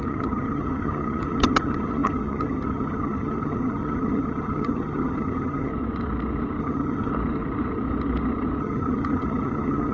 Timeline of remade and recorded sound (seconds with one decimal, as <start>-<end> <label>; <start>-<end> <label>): 0.0-5.7 remade; 5.7-6.6 recorded; 6.6-7.1 remade; 7.1-8.6 recorded; 8.6-9.9 remade